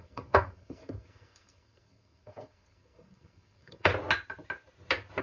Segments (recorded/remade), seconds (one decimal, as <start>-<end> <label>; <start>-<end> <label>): 0.0-3.9 remade; 3.9-5.2 recorded